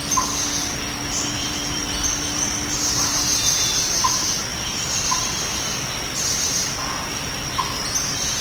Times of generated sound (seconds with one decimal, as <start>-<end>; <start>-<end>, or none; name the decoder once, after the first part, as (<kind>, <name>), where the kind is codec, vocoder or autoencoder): 1.4-3.2 (vocoder, BigVGAN v2); 4.5-7.3